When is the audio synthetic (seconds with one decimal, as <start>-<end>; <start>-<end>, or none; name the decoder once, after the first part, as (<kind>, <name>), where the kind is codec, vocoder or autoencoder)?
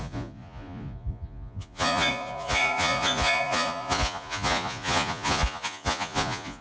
0.0-6.6 (vocoder, Vocos)